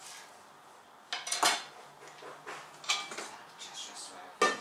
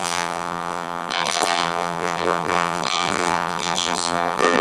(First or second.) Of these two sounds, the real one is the first